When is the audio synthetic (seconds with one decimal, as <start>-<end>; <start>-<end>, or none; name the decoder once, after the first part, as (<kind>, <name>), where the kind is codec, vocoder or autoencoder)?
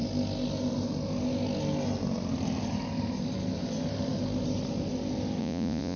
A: 5.4-6.0 (vocoder, Vocos)